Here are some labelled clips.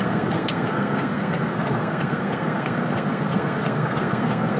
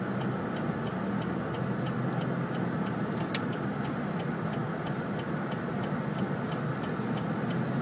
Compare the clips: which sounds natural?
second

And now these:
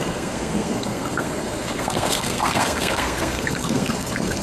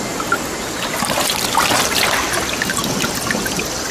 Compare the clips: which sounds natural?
second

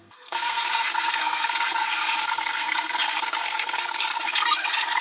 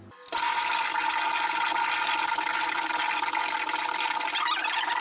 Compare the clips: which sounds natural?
second